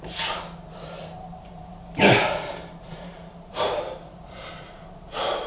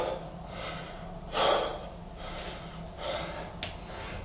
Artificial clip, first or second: first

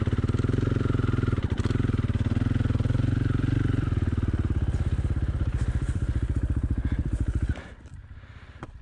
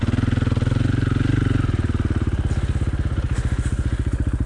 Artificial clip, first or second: first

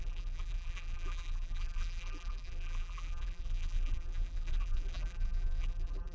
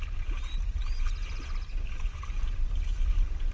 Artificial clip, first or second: first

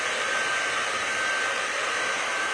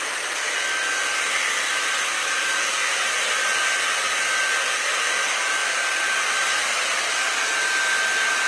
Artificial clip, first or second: first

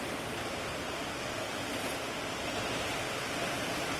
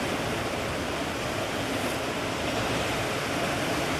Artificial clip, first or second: second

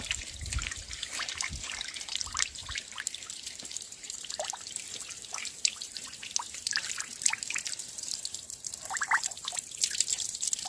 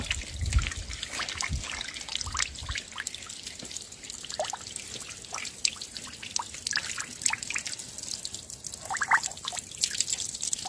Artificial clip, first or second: first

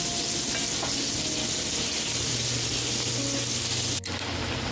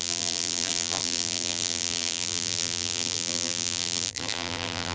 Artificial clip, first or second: second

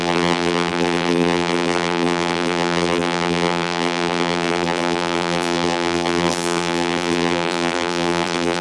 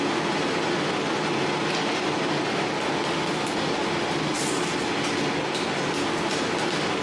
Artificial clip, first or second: first